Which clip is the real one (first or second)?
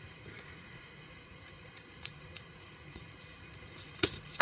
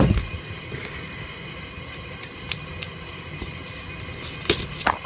second